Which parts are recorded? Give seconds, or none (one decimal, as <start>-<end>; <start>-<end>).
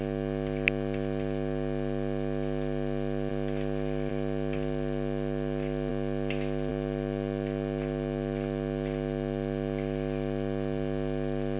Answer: 0.0-11.6